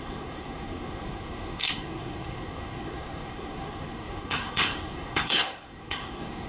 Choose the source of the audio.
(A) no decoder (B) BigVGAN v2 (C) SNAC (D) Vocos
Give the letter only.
C